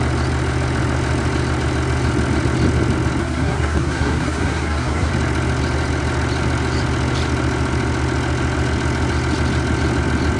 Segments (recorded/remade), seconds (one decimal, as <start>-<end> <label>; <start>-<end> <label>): 0.0-3.2 recorded; 3.2-5.1 remade; 5.1-10.4 recorded